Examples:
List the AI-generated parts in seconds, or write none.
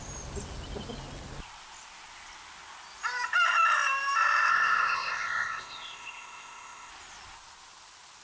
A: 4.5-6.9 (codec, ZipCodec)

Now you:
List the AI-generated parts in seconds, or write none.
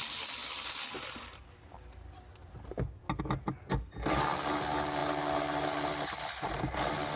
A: none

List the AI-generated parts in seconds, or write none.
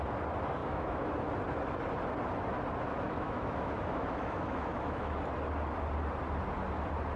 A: 0.6-1.3 (autoencoder, DAC-VAE); 2.9-5.2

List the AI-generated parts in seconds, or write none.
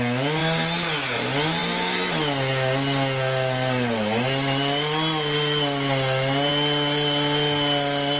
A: none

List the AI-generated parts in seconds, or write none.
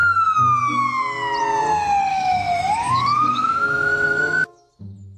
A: 2.1-4.7 (autoencoder, DAC-VAE)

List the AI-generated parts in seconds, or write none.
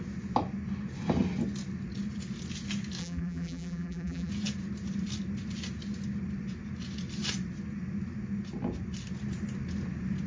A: 3.0-4.3 (vocoder, BigVGAN v2)